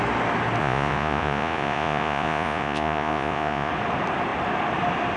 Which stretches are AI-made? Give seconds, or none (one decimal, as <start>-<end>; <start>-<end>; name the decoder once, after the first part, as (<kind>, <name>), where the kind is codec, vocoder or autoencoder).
0.6-3.7 (vocoder, Vocos)